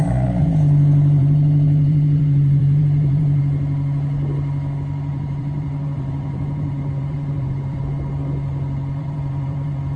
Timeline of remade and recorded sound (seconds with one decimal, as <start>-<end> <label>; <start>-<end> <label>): 0.0-1.2 recorded; 1.2-3.4 remade; 3.4-5.1 recorded; 5.1-7.8 remade; 7.8-9.0 recorded; 9.0-10.0 remade

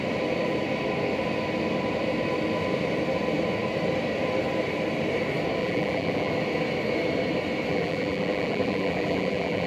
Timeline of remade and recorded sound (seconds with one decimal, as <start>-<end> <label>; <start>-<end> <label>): 0.0-5.6 recorded; 5.6-6.3 remade; 6.3-7.7 recorded; 7.7-9.7 remade

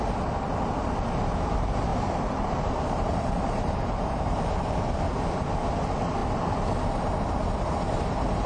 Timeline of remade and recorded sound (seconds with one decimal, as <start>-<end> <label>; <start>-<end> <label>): 0.0-1.9 recorded; 1.9-5.5 remade; 5.5-8.5 recorded

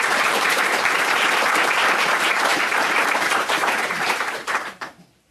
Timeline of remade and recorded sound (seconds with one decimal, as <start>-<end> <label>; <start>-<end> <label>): 0.0-2.5 recorded; 2.5-5.3 remade

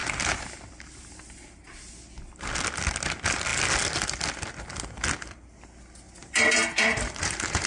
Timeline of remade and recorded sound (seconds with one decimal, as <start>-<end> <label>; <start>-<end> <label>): 0.0-2.0 remade; 2.0-6.2 recorded; 6.2-7.7 remade

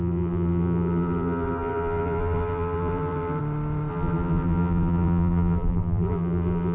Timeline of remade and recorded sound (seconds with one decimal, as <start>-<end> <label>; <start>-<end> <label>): 0.0-3.4 remade; 3.4-3.9 recorded; 3.9-6.7 remade

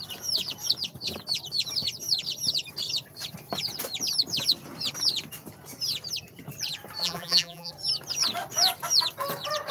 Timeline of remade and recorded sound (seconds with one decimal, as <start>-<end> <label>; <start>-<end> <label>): 0.0-7.0 recorded; 7.0-7.7 remade; 7.7-9.7 recorded